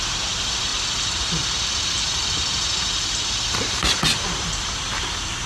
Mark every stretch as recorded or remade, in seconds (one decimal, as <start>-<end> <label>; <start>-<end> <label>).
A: 0.0-0.7 remade; 0.7-3.5 recorded; 3.5-5.5 remade